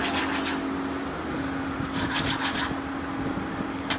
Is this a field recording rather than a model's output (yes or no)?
yes